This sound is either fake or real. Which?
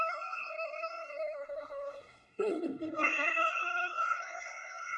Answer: fake